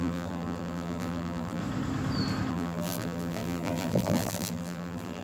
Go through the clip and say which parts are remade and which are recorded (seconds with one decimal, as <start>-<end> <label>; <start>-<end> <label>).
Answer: 0.0-1.6 remade; 1.6-2.5 recorded; 2.5-5.2 remade